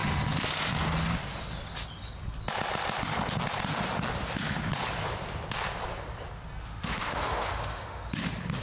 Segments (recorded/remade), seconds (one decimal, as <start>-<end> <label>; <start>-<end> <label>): 0.0-6.6 recorded; 6.6-8.1 remade; 8.1-8.6 recorded

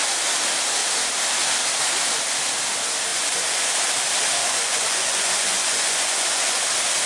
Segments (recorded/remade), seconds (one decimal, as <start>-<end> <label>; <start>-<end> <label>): 0.0-3.1 recorded; 3.1-3.7 remade; 3.7-4.4 recorded; 4.4-6.6 remade; 6.6-7.1 recorded

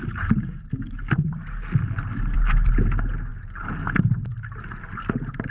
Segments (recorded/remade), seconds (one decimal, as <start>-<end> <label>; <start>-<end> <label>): 0.0-5.5 recorded

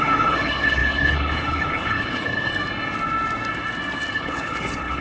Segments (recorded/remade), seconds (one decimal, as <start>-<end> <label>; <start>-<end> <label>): 0.0-2.5 remade; 2.5-4.1 recorded; 4.1-5.0 remade